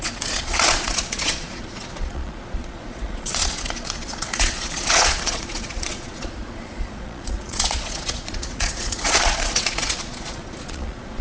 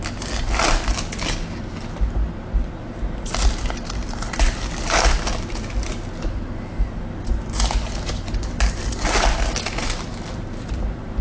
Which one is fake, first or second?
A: first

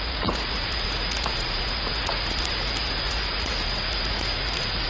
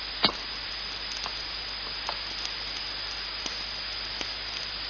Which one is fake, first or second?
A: first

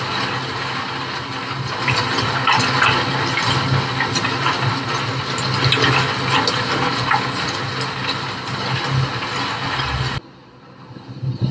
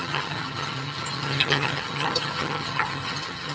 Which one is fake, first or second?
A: second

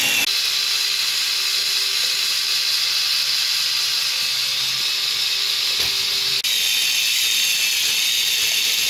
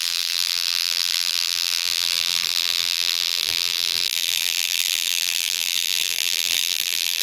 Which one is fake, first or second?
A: second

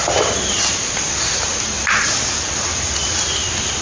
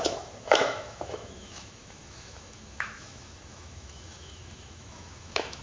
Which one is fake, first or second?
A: second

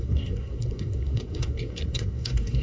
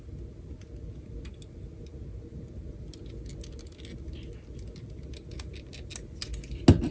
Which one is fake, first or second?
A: first